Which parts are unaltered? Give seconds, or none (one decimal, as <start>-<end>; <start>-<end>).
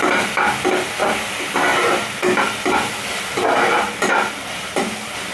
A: 0.0-1.7